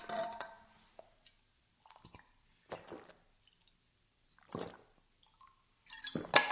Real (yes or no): yes